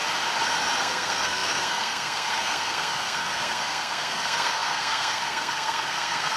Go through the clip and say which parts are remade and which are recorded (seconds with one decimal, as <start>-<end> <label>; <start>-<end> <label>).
0.0-0.8 recorded; 0.8-6.4 remade